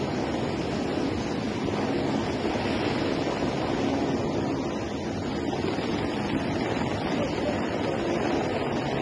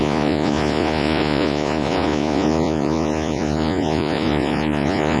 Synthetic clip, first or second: second